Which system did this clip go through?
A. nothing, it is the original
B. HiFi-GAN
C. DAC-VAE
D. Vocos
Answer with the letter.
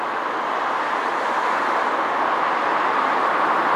A